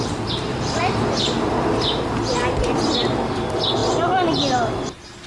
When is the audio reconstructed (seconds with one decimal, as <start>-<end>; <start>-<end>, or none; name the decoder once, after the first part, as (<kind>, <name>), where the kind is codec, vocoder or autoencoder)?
none